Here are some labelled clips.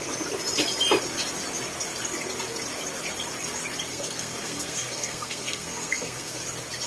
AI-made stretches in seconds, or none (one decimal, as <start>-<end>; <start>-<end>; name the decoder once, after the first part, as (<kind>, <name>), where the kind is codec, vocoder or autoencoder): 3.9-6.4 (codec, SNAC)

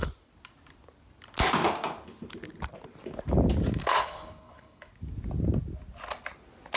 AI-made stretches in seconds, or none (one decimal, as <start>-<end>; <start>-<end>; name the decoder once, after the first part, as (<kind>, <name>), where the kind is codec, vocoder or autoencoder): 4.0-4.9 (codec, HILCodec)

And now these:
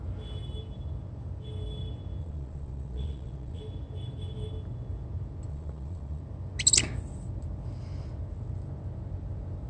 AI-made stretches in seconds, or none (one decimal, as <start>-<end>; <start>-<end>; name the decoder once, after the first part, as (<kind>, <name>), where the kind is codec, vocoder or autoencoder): 2.2-3.6 (vocoder, Vocos); 5.5-6.2